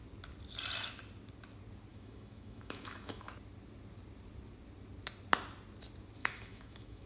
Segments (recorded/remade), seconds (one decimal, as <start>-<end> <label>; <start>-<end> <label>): 0.0-1.9 recorded; 1.9-3.3 remade; 3.3-6.2 recorded; 6.2-7.1 remade